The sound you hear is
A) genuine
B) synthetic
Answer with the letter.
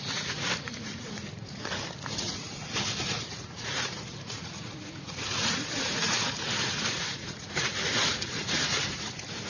B